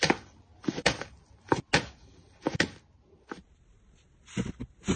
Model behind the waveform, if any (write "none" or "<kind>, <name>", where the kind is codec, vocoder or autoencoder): none